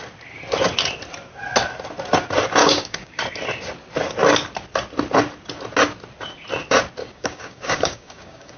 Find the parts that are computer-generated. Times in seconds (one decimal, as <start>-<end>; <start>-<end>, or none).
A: 2.6-3.2; 7.0-8.6